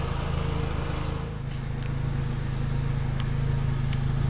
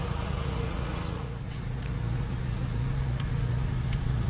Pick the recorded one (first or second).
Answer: first